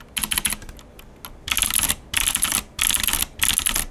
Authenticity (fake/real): real